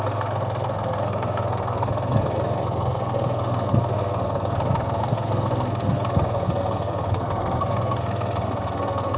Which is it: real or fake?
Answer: fake